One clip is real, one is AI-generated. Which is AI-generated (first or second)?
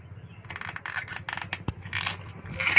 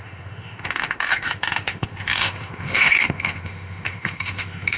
second